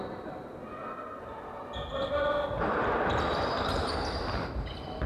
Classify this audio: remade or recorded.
recorded